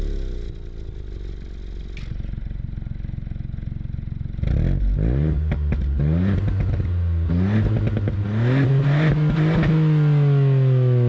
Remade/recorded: recorded